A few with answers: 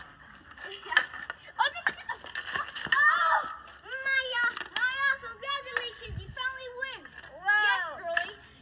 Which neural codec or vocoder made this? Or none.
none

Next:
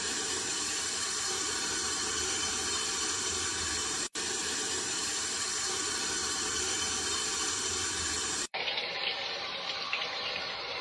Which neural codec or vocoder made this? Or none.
vocoder, BigVGAN v2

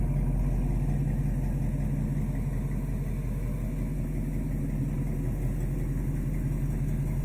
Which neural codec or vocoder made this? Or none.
none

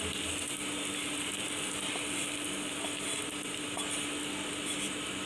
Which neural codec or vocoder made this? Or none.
none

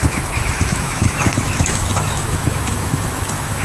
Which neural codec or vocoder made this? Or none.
autoencoder, DAC-VAE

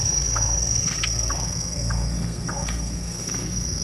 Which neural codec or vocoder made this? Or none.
codec, SNAC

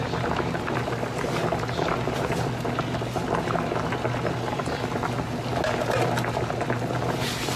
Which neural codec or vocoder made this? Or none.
none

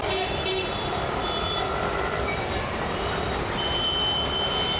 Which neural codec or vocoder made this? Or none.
vocoder, BigVGAN v2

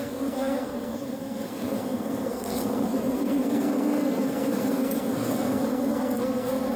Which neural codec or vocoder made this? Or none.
codec, SNAC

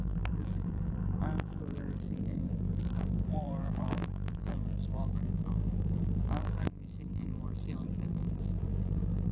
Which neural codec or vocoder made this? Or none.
vocoder, BigVGAN v2